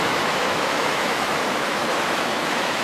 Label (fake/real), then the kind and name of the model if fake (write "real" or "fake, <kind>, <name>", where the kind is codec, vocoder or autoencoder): fake, autoencoder, DAC-VAE